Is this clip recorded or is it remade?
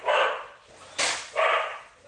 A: recorded